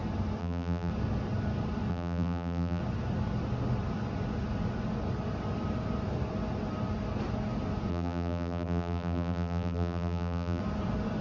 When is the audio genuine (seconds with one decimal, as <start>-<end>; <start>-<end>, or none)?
0.0-0.4; 0.9-1.9; 2.8-7.9; 10.6-11.2